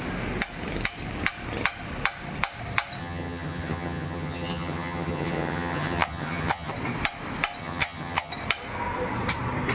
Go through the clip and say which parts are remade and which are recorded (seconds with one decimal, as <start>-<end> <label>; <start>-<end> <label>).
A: 0.0-3.0 recorded; 3.0-6.7 remade; 6.7-7.6 recorded; 7.6-8.3 remade; 8.3-9.7 recorded